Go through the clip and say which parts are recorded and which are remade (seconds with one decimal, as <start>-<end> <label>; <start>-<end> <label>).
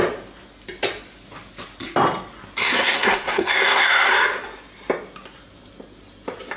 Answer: 0.0-2.6 recorded; 2.6-4.1 remade; 4.1-6.6 recorded